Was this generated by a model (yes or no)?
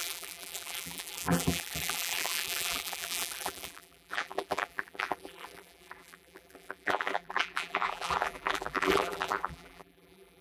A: yes